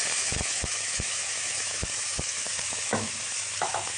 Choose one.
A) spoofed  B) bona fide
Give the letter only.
A